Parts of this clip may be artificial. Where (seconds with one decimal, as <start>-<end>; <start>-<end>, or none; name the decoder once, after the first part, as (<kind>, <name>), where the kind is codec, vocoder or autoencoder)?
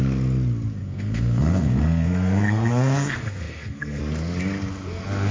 0.8-4.0 (codec, SNAC)